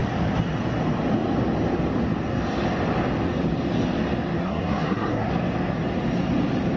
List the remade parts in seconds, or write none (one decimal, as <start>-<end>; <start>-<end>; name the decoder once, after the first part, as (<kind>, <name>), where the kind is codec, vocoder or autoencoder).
4.4-5.3 (codec, SNAC)